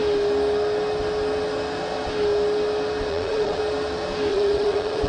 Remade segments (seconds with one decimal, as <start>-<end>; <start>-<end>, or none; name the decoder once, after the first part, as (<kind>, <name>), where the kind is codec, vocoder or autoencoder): 3.1-3.6 (vocoder, Vocos); 4.3-5.1